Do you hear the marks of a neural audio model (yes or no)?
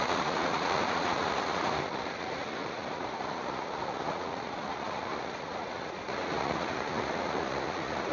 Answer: yes